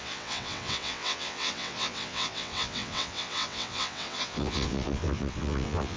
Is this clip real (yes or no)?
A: no